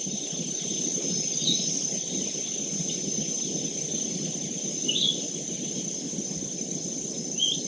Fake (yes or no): no